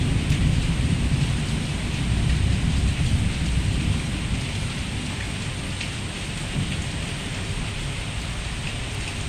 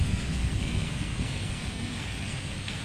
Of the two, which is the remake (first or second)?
second